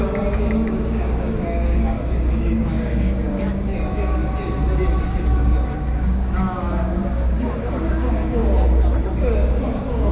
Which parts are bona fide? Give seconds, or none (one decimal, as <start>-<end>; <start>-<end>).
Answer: 4.2-5.0; 8.4-9.1